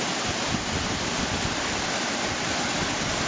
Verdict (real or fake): real